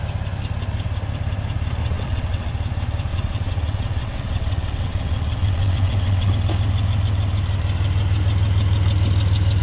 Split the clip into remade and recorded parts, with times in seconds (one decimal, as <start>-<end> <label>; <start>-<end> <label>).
0.0-1.8 recorded; 1.8-2.5 remade; 2.5-3.1 recorded; 3.1-6.3 remade; 6.3-9.6 recorded